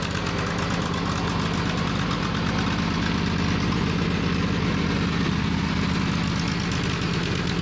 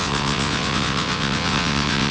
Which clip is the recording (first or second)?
first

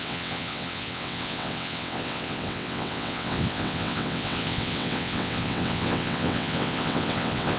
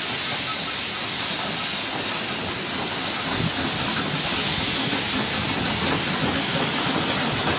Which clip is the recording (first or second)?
second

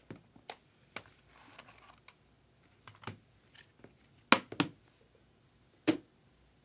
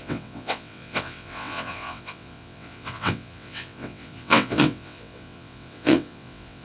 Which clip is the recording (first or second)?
first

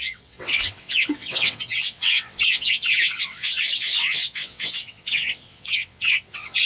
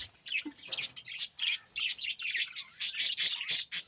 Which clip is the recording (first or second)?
second